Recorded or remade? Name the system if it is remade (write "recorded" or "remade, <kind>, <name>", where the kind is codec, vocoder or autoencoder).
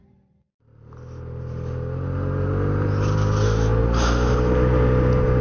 recorded